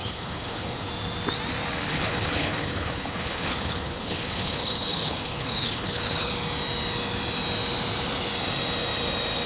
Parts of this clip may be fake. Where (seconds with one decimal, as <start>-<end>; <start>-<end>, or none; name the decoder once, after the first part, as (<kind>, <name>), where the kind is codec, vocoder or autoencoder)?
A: 0.0-0.9 (codec, HILCodec); 1.9-6.3